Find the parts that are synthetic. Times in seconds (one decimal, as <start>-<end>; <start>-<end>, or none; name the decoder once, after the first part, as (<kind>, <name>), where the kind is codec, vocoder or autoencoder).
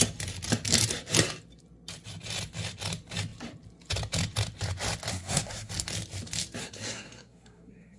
5.1-5.7 (codec, SNAC); 6.6-8.0